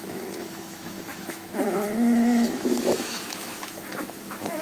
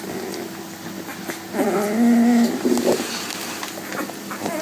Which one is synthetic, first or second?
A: first